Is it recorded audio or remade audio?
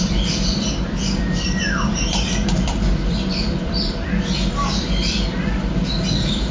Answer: remade